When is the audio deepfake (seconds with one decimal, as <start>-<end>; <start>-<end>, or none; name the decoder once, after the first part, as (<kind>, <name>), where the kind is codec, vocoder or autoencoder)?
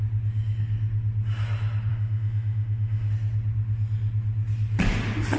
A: 1.9-3.1 (autoencoder, DAC-VAE)